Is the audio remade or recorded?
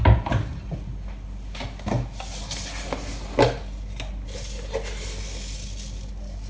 recorded